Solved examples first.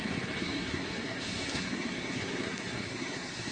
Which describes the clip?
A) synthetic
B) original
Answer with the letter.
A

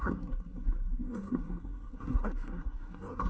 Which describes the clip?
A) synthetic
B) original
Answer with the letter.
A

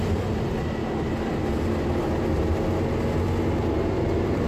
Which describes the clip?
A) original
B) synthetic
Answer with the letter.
A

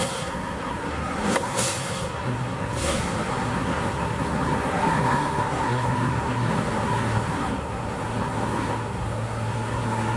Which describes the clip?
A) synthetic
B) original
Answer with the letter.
A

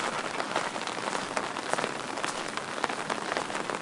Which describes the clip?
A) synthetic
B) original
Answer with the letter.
B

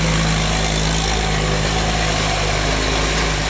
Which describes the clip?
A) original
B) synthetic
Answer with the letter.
A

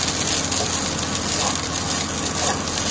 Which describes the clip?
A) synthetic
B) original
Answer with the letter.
B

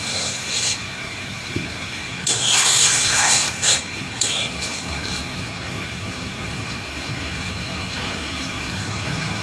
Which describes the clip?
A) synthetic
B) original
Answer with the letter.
A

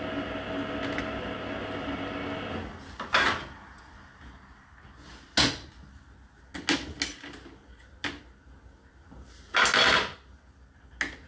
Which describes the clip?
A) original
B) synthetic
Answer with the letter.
A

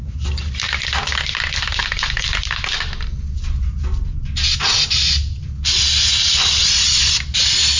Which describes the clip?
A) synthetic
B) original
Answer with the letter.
B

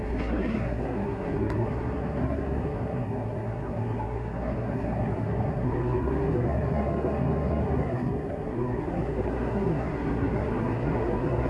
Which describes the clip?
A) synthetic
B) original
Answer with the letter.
A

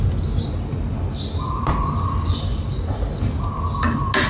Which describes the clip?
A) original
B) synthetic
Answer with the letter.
A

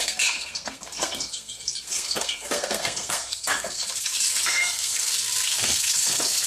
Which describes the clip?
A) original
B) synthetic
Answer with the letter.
B